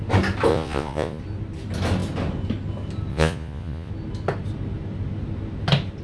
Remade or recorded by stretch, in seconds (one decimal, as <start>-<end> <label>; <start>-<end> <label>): 0.0-0.5 recorded; 0.5-1.2 remade; 1.2-3.1 recorded; 3.1-3.9 remade; 3.9-6.0 recorded